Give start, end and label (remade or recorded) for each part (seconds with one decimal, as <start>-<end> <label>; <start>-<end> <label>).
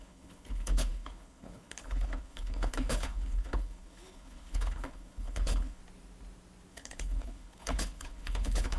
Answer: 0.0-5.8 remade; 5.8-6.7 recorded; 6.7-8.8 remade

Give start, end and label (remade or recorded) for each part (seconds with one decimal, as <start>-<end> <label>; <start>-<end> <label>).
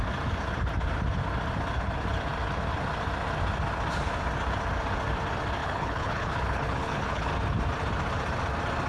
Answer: 0.0-5.6 recorded; 5.6-7.3 remade; 7.3-8.9 recorded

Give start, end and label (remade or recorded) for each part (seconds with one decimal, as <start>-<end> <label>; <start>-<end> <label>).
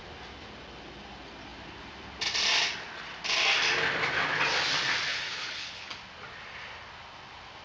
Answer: 0.0-5.1 recorded; 5.1-5.9 remade; 5.9-7.6 recorded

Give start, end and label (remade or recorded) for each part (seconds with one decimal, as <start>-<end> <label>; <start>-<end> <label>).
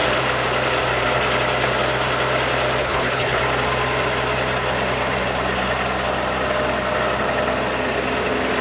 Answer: 0.0-2.8 recorded; 2.8-3.4 remade; 3.4-8.6 recorded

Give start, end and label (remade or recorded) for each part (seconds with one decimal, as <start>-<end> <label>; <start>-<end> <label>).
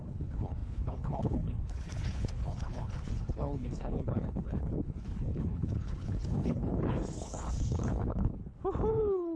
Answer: 0.0-8.4 remade; 8.4-8.9 recorded; 8.9-9.4 remade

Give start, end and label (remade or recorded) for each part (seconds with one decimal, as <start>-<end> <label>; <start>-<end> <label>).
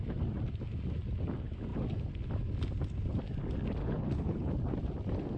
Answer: 0.0-3.8 recorded; 3.8-4.5 remade; 4.5-5.4 recorded